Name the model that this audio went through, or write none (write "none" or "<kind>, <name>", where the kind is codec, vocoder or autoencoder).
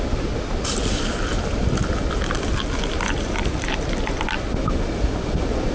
none